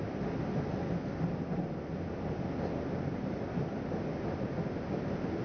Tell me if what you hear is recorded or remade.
recorded